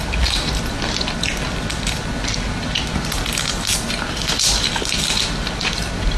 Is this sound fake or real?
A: real